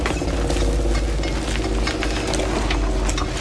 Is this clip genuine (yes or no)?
yes